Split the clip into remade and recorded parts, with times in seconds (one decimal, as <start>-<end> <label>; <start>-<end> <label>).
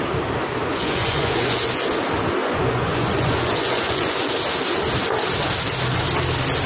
0.0-0.6 recorded; 0.6-1.9 remade; 1.9-2.4 recorded; 2.4-4.3 remade; 4.3-6.7 recorded